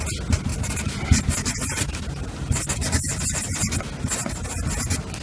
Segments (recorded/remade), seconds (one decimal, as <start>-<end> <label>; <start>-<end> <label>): 0.0-5.2 recorded